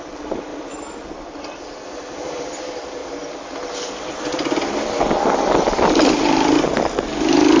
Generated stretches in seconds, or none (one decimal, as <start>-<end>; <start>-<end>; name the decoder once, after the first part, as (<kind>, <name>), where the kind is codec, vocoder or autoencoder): 3.0-6.5 (vocoder, BigVGAN v2)